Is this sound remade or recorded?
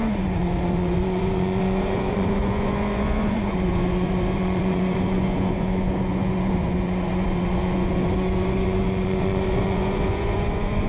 remade